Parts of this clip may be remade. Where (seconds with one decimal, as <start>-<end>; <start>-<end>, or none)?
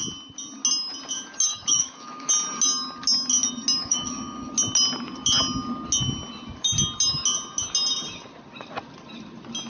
1.5-2.3; 3.8-4.5